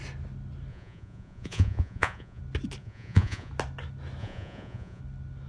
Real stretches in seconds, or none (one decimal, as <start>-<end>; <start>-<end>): 0.0-0.7; 2.4-2.8; 3.5-4.2; 5.0-5.5